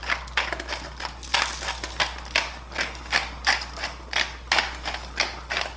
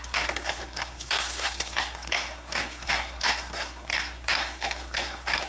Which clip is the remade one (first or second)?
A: second